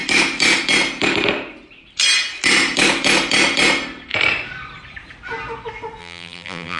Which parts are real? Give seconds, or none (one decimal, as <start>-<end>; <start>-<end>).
0.0-6.0